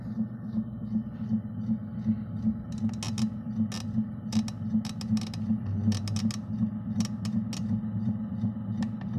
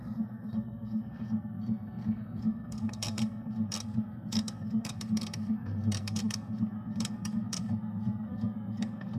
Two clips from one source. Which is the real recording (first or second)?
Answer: first